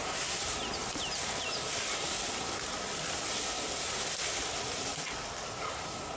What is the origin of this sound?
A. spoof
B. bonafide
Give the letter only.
B